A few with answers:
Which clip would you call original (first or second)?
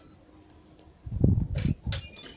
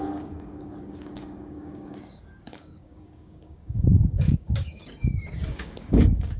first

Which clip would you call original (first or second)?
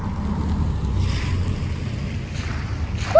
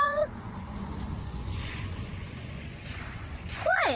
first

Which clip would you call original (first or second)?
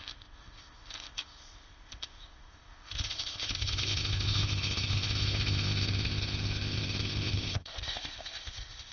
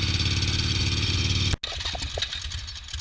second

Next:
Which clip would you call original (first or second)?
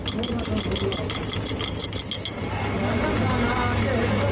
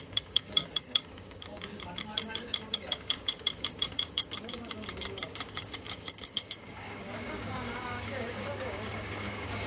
first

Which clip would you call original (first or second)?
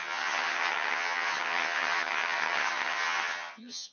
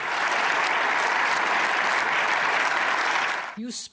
second